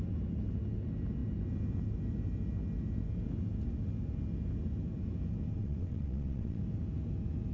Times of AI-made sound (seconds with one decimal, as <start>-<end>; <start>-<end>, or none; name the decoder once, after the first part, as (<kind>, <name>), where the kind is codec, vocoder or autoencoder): 5.6-6.6 (vocoder, WaveNeXt)